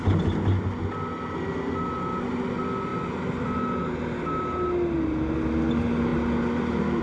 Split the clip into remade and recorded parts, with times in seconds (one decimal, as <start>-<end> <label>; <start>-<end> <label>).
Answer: 0.0-7.0 recorded